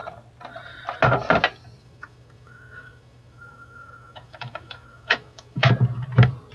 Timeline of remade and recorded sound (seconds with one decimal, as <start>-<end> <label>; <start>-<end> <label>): 0.0-1.8 recorded; 1.8-5.7 remade; 5.7-6.5 recorded